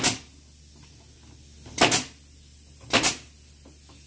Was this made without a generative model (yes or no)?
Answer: yes